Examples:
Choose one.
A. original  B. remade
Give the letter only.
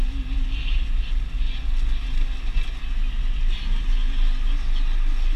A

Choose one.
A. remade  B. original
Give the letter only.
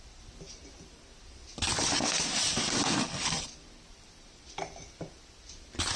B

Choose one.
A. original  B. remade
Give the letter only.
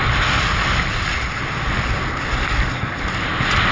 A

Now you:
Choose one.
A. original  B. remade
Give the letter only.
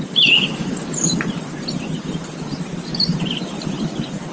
A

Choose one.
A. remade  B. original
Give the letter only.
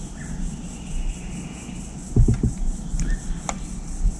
B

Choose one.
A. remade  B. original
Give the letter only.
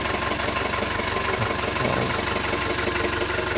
B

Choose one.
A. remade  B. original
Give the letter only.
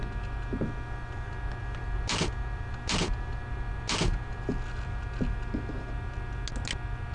B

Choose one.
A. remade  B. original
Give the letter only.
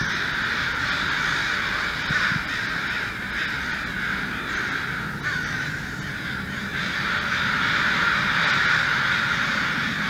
B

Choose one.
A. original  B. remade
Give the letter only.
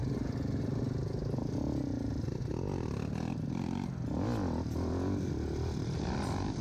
A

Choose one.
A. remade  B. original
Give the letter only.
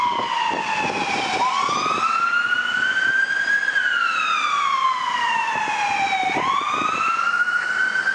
B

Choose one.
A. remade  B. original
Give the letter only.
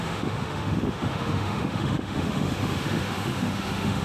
A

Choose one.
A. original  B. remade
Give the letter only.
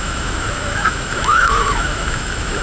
B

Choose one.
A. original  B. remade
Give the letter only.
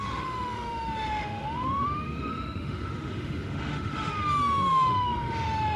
B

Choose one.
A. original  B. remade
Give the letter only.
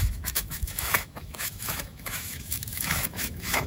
B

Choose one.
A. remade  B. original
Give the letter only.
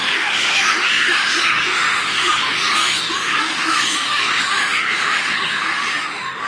A